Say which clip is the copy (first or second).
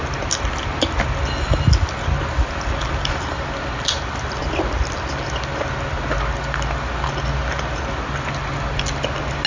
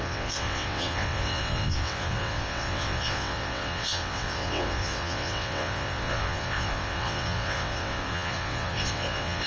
second